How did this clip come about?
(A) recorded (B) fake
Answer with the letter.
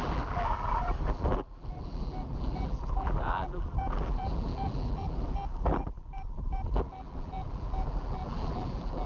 B